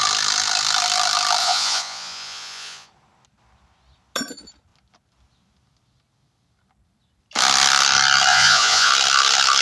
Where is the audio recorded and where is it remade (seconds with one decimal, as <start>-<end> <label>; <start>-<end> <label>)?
0.0-1.4 recorded; 1.4-2.9 remade; 2.9-8.3 recorded; 8.3-8.9 remade; 8.9-9.6 recorded